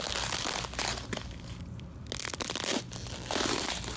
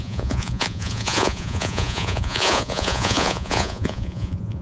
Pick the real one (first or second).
first